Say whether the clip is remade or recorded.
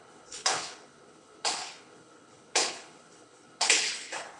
remade